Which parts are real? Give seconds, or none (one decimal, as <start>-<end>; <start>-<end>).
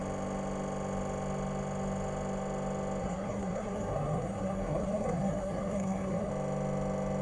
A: 0.0-3.0; 6.3-7.2